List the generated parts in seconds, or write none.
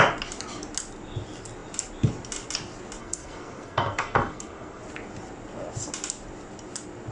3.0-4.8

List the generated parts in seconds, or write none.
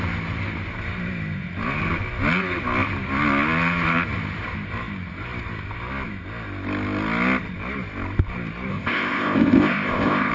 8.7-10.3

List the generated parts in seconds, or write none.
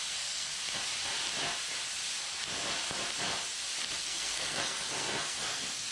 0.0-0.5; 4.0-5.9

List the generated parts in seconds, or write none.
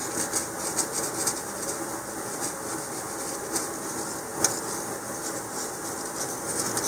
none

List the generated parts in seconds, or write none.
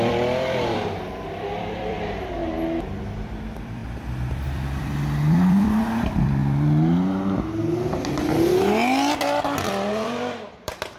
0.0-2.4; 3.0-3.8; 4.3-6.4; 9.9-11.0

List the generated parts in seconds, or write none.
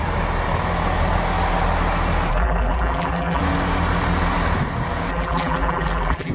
2.3-3.4; 5.1-6.3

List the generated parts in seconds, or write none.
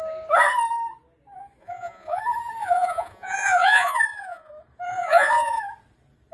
1.6-2.2; 2.6-4.5; 4.9-5.6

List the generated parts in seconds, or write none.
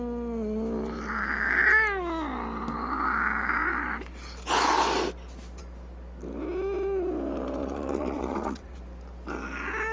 7.6-8.8